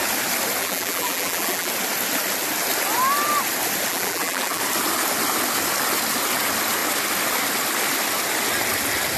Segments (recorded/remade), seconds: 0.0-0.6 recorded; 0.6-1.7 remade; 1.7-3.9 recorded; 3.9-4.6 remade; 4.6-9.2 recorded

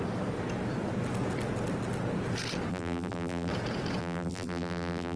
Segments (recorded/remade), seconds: 0.0-2.7 recorded; 2.7-3.5 remade; 3.5-4.0 recorded; 4.0-5.2 remade

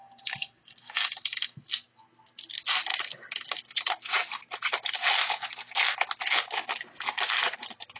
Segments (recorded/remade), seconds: 0.0-8.0 recorded